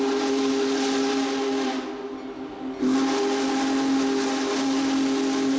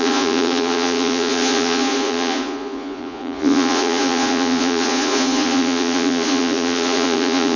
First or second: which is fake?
second